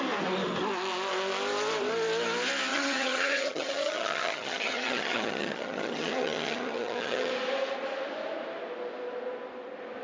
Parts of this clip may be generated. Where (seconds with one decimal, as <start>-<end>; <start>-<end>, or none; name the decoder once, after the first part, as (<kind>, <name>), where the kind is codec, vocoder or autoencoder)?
2.7-7.3 (vocoder, HiFi-GAN)

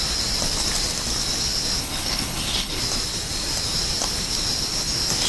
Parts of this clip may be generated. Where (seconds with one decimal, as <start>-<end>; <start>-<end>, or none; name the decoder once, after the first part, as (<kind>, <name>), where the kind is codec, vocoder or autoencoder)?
1.8-2.8 (codec, HILCodec)